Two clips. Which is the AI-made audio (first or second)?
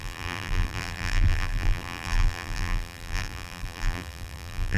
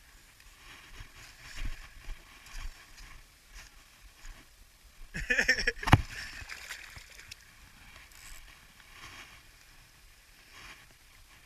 first